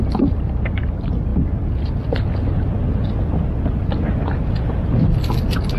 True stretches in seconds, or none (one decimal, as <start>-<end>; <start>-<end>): 0.0-5.8